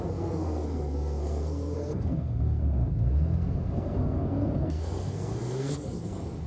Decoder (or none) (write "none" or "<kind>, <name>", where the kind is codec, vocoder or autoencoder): codec, SNAC